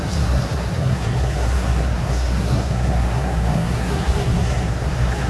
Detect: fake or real fake